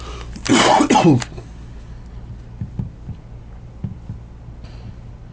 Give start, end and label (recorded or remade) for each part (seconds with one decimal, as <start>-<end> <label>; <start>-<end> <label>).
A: 0.0-5.3 recorded